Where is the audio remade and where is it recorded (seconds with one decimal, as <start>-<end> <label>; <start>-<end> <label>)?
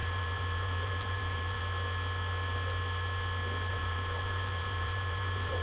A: 0.0-1.6 remade; 1.6-3.7 recorded; 3.7-5.6 remade